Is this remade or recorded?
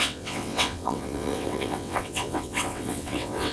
remade